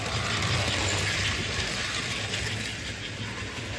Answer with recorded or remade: recorded